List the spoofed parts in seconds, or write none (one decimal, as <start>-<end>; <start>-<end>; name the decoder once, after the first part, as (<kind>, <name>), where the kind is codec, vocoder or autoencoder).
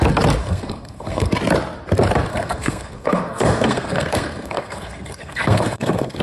0.4-1.3 (codec, SNAC); 2.3-6.2